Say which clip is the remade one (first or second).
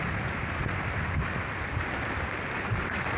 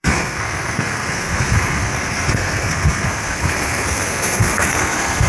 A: second